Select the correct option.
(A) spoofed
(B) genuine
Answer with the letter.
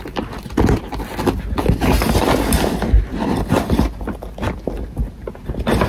B